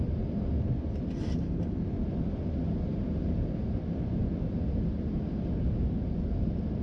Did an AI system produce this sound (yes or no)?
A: no